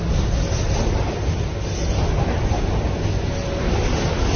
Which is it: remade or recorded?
recorded